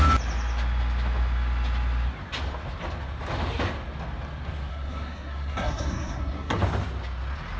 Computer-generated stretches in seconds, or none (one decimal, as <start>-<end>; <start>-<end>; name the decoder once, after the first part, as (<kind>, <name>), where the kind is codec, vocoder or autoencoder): 4.7-6.6 (codec, SNAC)